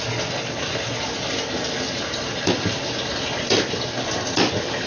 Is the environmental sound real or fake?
real